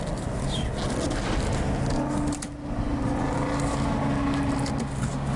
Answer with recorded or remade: recorded